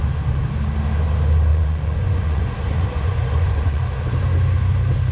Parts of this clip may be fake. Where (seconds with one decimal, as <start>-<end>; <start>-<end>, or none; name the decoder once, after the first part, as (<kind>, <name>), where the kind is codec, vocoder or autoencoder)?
1.5-3.8 (vocoder, Vocos)